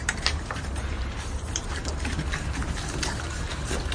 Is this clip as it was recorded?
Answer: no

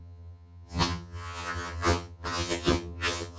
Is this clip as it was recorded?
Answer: no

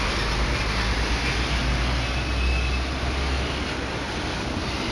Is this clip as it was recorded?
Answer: yes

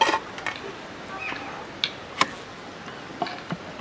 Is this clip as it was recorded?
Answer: yes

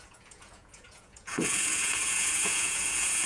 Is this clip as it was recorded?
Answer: no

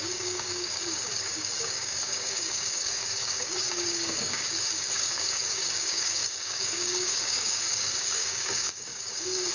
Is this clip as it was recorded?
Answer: no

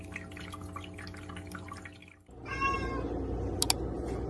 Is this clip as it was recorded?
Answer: yes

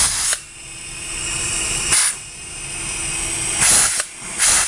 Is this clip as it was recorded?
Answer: yes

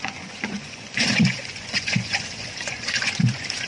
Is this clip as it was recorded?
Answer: no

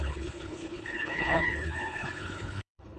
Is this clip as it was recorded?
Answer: no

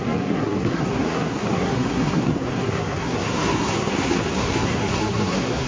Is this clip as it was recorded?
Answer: no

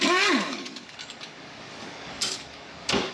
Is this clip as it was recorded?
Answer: no